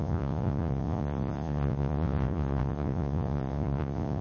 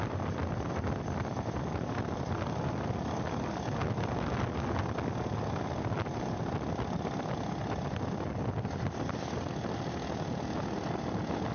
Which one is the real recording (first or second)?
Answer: second